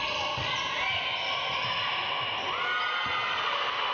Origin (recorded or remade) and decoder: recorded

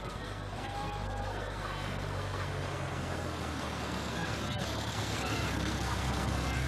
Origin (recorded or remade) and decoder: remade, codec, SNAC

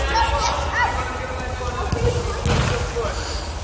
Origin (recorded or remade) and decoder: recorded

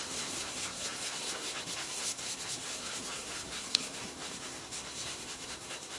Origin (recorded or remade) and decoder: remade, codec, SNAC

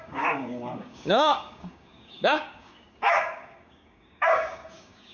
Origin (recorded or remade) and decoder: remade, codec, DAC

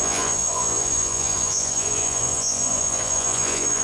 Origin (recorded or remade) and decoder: remade, vocoder, Vocos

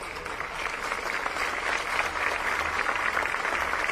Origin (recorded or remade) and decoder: recorded